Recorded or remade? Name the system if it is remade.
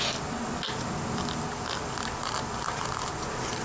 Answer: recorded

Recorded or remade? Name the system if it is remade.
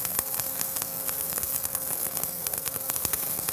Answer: remade, codec, SNAC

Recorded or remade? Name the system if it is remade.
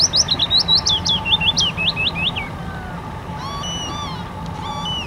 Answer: recorded